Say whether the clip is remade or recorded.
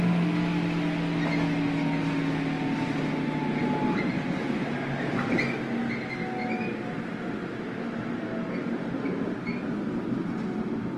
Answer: recorded